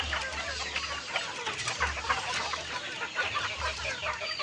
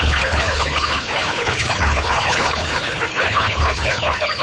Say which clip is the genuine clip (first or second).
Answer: first